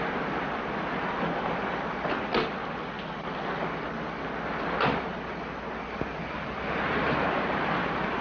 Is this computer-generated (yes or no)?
no